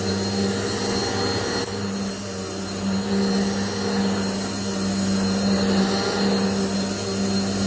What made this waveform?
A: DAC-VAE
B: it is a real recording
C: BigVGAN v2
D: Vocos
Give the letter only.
B